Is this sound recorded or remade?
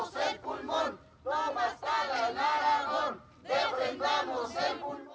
recorded